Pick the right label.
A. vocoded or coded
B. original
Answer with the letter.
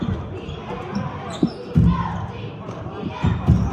B